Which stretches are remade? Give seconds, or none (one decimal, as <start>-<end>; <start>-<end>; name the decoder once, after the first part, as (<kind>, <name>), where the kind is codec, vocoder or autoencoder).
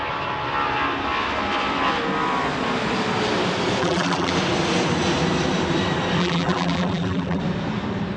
3.8-4.3 (vocoder, BigVGAN v2); 6.2-7.4